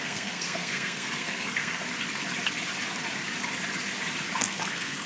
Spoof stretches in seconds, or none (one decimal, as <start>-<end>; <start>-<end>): 0.0-1.8; 4.4-5.1